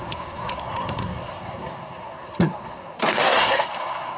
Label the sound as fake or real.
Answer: fake